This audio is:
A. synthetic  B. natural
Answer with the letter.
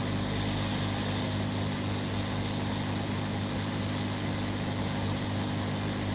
B